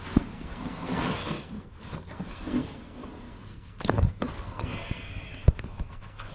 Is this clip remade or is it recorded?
remade